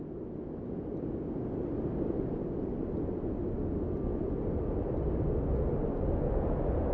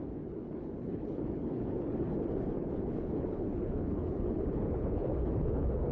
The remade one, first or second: second